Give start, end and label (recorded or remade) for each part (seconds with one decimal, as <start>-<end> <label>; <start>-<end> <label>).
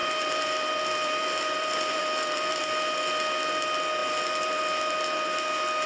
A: 0.0-2.6 remade; 2.6-4.0 recorded; 4.0-4.6 remade; 4.6-5.9 recorded